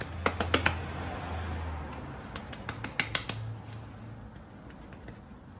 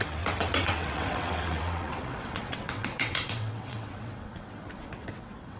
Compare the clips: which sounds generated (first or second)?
second